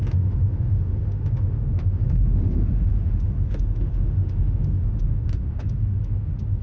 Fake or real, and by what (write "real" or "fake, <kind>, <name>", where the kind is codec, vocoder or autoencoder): fake, autoencoder, DAC-VAE